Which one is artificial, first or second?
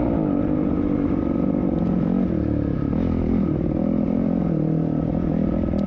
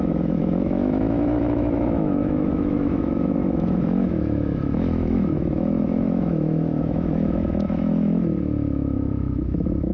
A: second